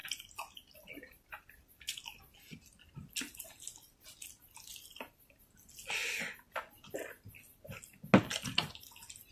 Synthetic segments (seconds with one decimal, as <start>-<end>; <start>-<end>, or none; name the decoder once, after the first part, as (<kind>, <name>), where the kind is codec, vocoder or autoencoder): none